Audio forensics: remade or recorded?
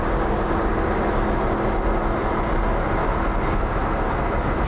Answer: recorded